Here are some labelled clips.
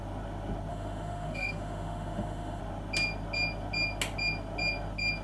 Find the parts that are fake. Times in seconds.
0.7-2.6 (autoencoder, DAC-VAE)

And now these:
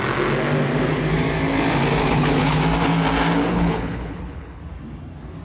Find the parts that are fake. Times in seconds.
2.0-2.6 (codec, HILCodec); 3.5-4.6

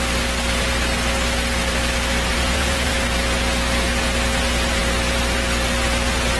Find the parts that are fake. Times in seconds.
2.3-2.9 (vocoder, Vocos)

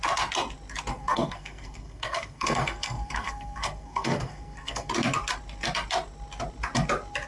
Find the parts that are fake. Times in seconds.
0.9-4.9 (codec, SNAC)